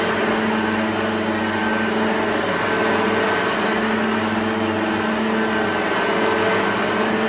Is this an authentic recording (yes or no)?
yes